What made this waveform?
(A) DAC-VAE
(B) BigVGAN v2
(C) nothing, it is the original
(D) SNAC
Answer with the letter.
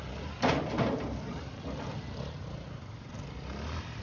B